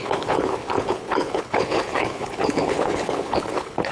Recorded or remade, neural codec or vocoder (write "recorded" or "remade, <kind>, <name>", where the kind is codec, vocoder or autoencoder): remade, codec, HILCodec